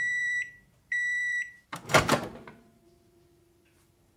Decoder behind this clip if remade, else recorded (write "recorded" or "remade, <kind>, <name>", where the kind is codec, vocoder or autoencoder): remade, vocoder, BigVGAN v2